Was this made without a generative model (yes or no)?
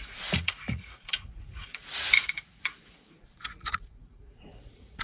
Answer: no